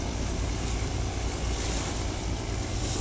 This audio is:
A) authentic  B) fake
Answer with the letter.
A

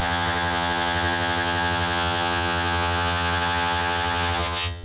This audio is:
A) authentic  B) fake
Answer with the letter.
B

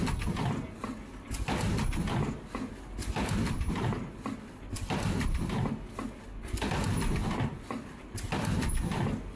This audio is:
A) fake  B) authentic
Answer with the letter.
B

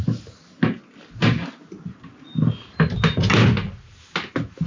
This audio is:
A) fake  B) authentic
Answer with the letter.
B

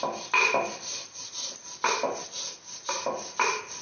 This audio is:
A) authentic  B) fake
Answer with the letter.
A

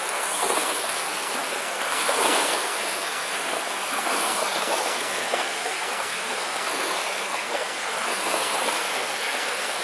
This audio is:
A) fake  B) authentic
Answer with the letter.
A